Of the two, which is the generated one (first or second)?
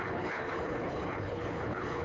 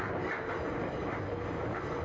first